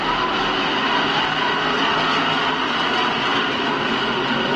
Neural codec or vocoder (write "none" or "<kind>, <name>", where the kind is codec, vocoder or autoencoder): none